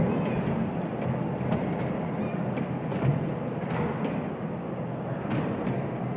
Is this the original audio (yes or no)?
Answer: yes